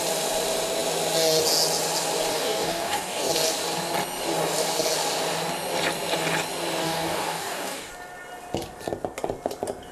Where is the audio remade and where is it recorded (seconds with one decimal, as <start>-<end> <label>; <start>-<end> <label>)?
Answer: 0.0-2.3 recorded; 2.3-3.3 remade; 3.3-6.8 recorded; 6.8-7.9 remade; 7.9-9.9 recorded